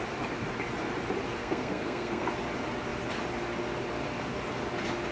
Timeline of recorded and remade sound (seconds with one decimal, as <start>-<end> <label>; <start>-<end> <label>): 0.0-1.4 recorded; 1.4-2.3 remade; 2.3-5.1 recorded